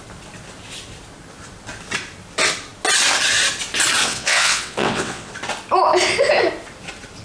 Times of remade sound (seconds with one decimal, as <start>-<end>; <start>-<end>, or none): 4.0-5.3